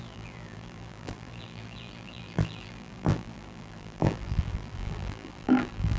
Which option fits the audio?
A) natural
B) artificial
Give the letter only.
B